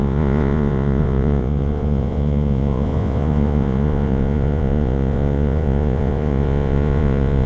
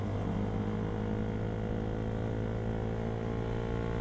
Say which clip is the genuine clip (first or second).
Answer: second